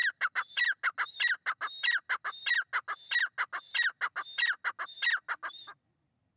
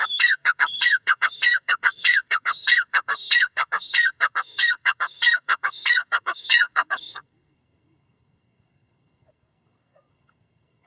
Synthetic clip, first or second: second